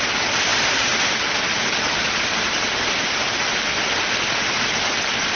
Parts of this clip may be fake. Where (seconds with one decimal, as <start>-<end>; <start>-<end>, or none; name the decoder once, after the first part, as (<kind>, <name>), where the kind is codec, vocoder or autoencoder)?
0.5-3.7 (vocoder, BigVGAN v2)